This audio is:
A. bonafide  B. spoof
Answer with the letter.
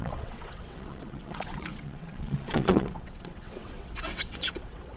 B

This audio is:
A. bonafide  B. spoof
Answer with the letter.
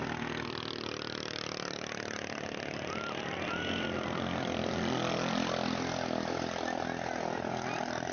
A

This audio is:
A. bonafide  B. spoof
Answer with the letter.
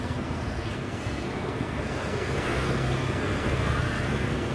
B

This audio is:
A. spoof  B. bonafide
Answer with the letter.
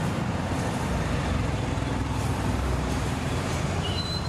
A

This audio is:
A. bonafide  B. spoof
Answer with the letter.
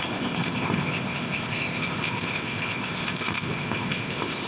B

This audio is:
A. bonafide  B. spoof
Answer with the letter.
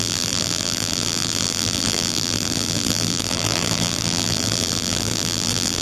B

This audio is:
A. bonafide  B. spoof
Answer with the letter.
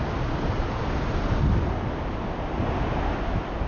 A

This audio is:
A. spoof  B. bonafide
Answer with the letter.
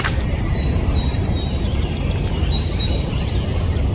A